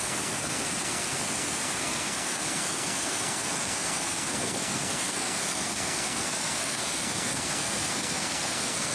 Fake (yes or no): yes